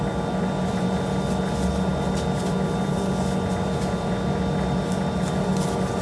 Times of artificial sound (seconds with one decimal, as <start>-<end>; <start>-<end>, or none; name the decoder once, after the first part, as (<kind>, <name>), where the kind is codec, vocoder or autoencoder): none